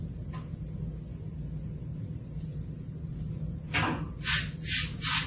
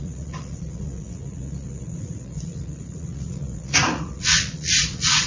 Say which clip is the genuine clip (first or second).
first